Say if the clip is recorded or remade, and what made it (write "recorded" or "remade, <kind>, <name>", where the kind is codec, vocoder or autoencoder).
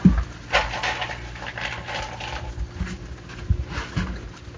recorded